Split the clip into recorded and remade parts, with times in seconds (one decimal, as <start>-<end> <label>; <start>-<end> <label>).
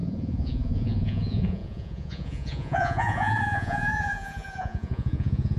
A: 0.0-5.6 remade